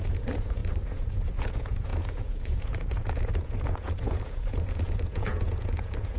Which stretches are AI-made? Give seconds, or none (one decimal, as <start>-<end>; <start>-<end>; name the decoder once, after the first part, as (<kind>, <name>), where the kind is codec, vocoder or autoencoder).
0.0-6.2 (vocoder, Vocos)